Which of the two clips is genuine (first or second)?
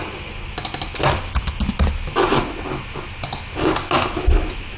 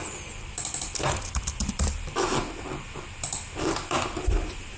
first